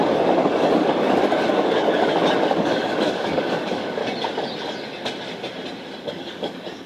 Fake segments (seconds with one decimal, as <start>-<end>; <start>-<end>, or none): 0.0-4.0; 6.1-6.9